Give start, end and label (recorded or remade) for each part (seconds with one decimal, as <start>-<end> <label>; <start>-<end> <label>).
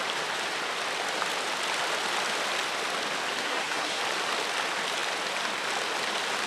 0.0-3.4 recorded; 3.4-4.0 remade; 4.0-6.5 recorded